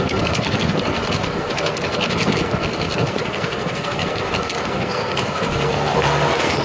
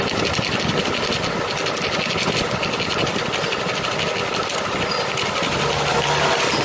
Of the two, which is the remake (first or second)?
first